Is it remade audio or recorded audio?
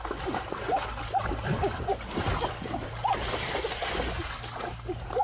recorded